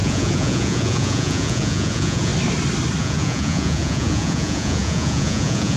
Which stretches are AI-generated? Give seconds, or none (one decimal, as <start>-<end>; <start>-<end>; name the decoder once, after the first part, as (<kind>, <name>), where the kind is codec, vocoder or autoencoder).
0.0-2.3 (vocoder, Vocos); 3.0-5.8